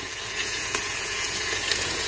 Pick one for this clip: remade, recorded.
remade